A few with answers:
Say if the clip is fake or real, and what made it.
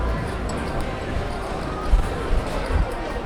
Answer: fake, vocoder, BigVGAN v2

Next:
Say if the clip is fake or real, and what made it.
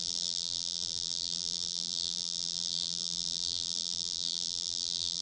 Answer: fake, vocoder, BigVGAN v2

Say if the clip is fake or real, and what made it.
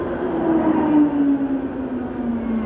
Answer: real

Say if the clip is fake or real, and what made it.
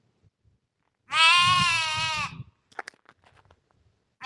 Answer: real